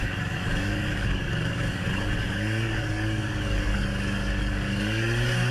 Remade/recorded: remade